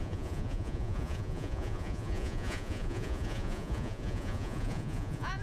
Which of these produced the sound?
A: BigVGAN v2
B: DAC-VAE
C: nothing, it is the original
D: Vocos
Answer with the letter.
D